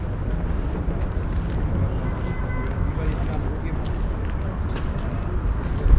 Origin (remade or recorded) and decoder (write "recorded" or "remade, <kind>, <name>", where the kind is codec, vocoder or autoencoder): recorded